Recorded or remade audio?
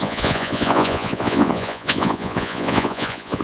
remade